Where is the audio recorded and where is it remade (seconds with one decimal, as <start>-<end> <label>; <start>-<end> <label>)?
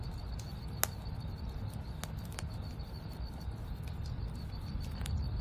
0.0-5.4 recorded